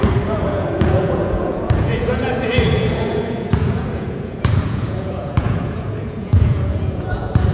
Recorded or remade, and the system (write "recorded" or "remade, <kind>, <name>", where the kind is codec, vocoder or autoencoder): remade, vocoder, Vocos